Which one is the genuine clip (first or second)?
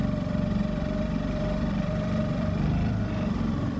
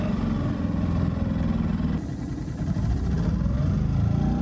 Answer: second